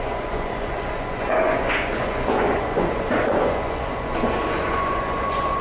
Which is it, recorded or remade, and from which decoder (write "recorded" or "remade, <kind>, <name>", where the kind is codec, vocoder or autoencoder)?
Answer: remade, vocoder, Vocos